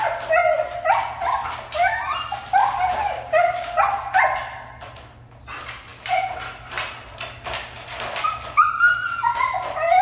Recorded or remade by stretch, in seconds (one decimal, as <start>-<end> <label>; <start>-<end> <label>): 0.0-2.6 recorded; 2.6-3.8 remade; 3.8-10.0 recorded